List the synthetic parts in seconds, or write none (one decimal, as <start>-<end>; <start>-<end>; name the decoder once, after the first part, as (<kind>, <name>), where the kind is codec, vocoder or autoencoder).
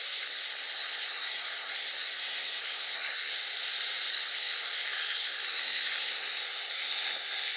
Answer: 0.0-3.3 (codec, SNAC); 4.1-7.6